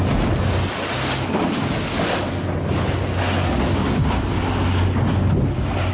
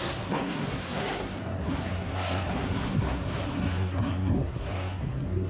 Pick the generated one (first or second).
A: second